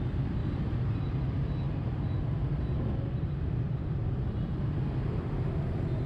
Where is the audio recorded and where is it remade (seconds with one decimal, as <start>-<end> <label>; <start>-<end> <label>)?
0.0-0.4 recorded; 0.4-1.0 remade; 1.0-2.4 recorded; 2.4-4.6 remade; 4.6-6.1 recorded